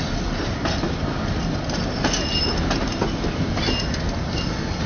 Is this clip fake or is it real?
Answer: real